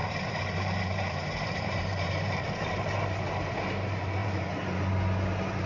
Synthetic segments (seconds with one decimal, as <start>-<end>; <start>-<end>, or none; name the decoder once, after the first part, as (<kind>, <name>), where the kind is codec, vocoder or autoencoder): 0.0-3.4 (vocoder, BigVGAN v2); 4.2-4.9